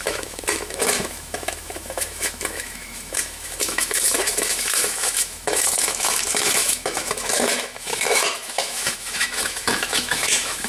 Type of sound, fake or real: fake